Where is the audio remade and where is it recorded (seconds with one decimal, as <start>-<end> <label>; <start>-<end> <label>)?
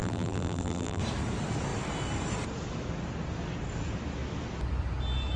0.0-1.0 remade; 1.0-5.4 recorded